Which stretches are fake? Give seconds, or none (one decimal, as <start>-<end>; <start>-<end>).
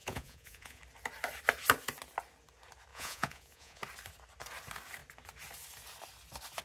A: 0.0-0.8; 2.9-3.8